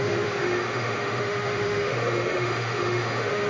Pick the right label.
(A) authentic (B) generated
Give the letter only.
B